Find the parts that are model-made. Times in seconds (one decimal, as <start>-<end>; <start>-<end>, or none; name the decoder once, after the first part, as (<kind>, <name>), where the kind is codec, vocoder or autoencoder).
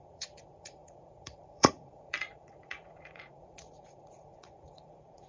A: 0.0-5.3 (vocoder, Vocos)